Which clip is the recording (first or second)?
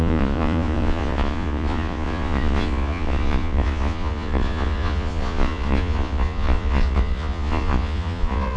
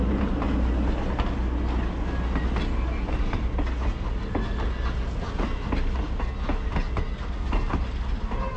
second